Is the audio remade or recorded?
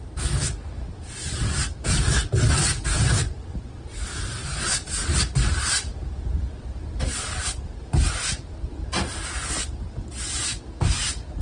remade